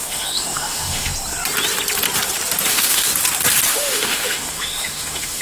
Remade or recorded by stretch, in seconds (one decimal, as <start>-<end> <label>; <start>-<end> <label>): 0.0-1.1 remade; 1.1-2.7 recorded; 2.7-3.1 remade; 3.1-3.7 recorded; 3.7-5.4 remade